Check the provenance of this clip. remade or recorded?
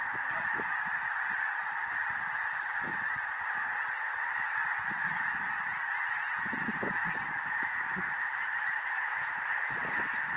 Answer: recorded